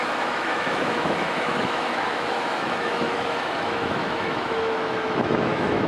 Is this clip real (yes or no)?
no